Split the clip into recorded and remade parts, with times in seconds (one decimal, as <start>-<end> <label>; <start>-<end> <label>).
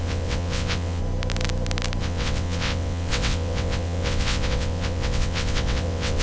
0.0-1.0 remade; 1.0-2.0 recorded; 2.0-6.2 remade